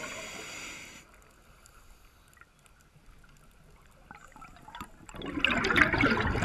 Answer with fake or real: real